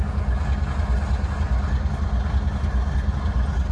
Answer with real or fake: real